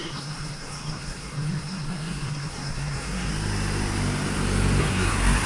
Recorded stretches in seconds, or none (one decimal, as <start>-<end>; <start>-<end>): 3.3-4.8